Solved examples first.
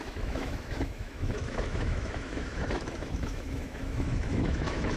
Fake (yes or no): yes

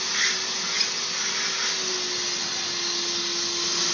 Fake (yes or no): no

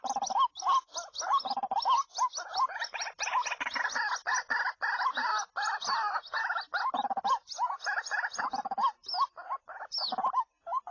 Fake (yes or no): no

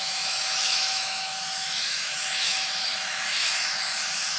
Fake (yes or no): yes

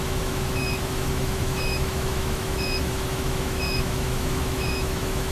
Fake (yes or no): yes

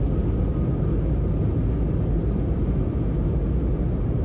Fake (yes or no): no